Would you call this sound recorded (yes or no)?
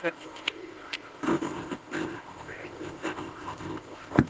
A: no